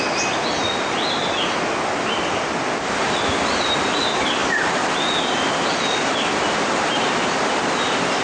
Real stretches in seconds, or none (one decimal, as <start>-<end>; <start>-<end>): 0.0-8.2